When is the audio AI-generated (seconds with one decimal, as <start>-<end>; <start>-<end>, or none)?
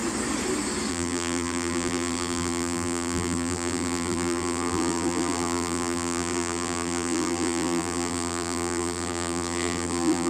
0.9-10.3